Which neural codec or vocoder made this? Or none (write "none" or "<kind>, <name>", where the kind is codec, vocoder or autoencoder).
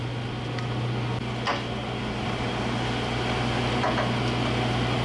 none